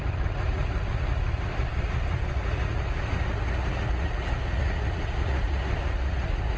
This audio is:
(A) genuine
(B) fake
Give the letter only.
B